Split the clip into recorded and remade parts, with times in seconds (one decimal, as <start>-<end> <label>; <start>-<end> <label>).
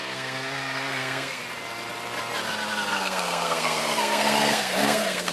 0.0-1.4 remade; 1.4-2.9 recorded; 2.9-5.3 remade